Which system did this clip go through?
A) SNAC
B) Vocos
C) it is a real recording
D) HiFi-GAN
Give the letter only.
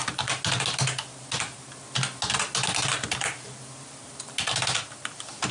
C